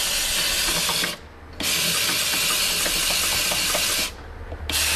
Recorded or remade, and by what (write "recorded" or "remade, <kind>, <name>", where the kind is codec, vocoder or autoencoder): recorded